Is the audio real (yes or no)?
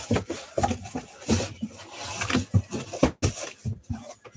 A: yes